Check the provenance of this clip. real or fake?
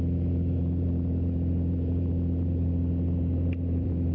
fake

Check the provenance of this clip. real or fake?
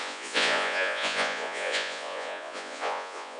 fake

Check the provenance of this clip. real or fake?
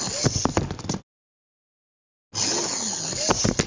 real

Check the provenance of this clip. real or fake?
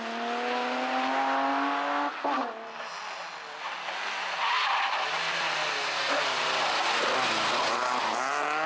real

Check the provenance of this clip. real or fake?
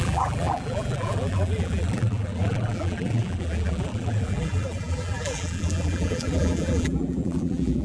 fake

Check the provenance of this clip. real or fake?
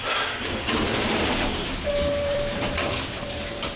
fake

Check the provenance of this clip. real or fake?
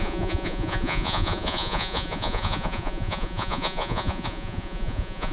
fake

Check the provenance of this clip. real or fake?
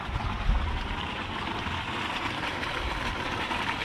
fake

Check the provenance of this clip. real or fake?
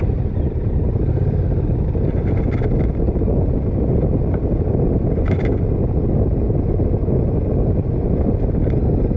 real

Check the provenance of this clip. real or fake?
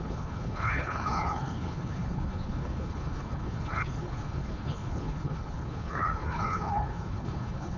fake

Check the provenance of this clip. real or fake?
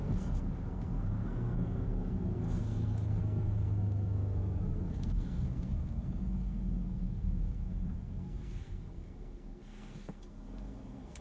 fake